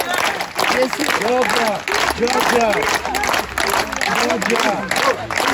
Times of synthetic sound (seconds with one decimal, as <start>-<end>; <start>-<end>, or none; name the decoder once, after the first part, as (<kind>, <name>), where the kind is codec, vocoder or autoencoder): none